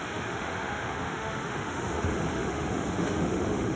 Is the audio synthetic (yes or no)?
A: yes